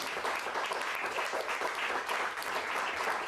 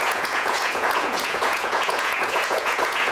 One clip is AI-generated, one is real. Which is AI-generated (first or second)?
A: second